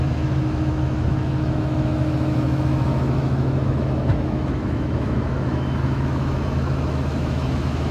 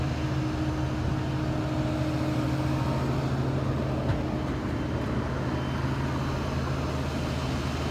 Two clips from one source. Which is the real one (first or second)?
second